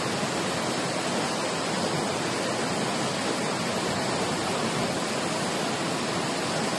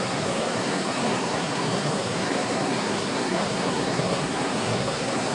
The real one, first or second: first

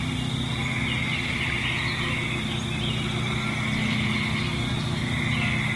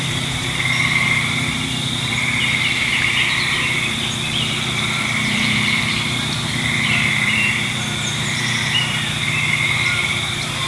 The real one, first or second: first